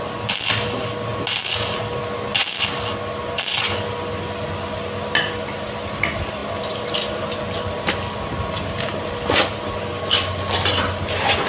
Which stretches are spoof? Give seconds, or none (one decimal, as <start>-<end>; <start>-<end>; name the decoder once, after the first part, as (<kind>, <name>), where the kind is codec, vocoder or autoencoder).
none